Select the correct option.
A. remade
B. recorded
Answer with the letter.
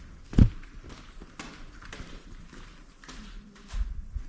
A